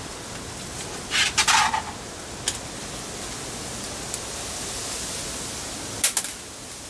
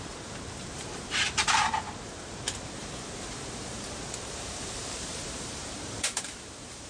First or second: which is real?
first